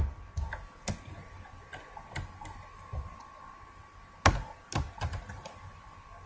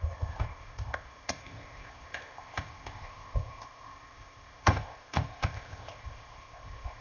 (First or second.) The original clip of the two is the first